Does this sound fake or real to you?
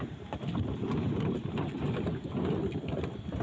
real